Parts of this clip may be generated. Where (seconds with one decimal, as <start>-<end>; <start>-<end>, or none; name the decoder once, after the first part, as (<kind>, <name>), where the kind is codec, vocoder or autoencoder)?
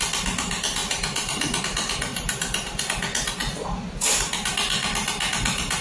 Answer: 0.8-1.6 (vocoder, BigVGAN v2); 2.1-2.8